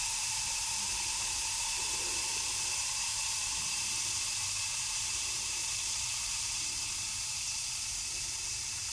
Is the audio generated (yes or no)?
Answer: yes